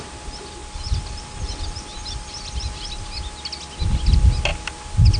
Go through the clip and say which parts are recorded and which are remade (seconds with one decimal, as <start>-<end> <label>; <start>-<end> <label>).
0.0-2.0 recorded; 2.0-3.0 remade; 3.0-5.2 recorded